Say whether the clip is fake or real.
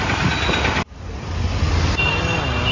real